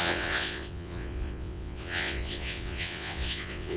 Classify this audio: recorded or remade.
remade